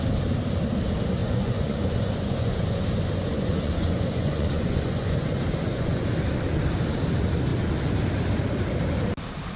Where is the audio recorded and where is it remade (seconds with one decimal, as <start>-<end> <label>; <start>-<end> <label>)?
0.0-1.2 recorded; 1.2-6.1 remade; 6.1-9.6 recorded